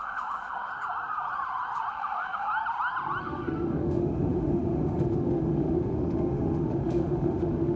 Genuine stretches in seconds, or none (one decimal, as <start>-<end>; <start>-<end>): 0.7-1.9; 2.5-3.2